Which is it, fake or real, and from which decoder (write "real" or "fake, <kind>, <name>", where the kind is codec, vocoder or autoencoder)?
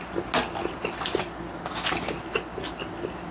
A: real